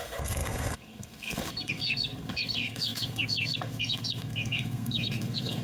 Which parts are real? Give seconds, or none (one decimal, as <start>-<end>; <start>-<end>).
none